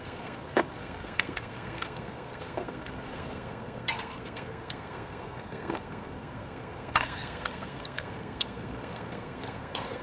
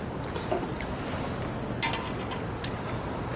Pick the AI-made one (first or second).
first